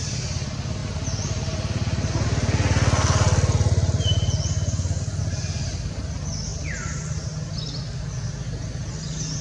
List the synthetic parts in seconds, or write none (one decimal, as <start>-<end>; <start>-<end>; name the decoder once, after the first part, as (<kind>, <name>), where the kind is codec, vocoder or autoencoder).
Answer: none